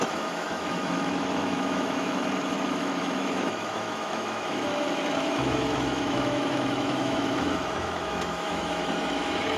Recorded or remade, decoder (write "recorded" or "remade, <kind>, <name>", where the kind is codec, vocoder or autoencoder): remade, autoencoder, DAC-VAE